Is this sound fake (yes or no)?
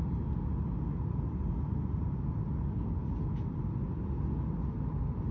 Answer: no